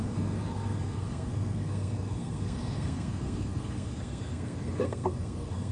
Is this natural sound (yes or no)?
no